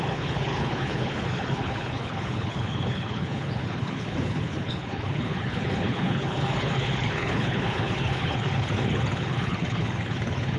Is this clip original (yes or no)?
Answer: no